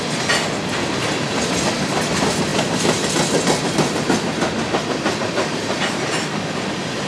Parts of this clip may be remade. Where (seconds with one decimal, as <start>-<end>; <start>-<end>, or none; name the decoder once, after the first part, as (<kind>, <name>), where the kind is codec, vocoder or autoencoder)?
none